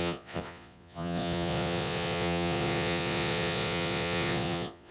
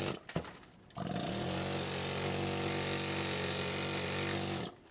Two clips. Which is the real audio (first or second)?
second